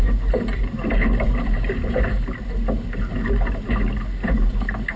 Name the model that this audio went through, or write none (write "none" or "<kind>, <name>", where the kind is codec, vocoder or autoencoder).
none